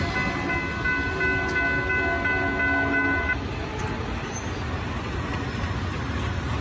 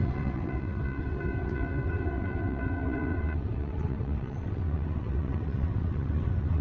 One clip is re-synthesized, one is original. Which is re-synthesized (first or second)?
second